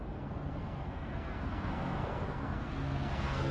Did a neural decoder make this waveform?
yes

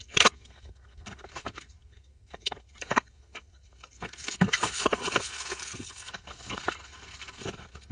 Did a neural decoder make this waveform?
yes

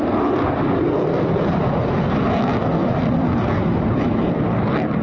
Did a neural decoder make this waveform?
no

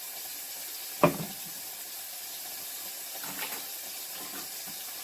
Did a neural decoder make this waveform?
no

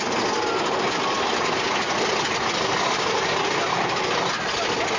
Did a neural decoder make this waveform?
no